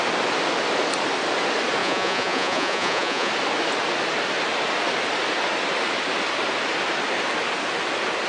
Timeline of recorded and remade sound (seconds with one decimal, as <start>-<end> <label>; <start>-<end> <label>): 0.0-1.8 recorded; 1.8-3.3 remade; 3.3-8.3 recorded